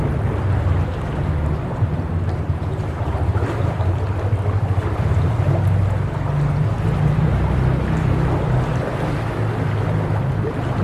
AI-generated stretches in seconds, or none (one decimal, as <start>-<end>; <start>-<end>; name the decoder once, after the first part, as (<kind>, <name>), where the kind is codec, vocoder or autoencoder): 2.7-4.2 (vocoder, BigVGAN v2)